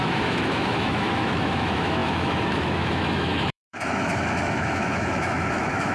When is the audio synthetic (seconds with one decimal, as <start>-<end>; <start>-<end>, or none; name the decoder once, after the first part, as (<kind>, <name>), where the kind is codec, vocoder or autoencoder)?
0.0-5.9 (autoencoder, DAC-VAE)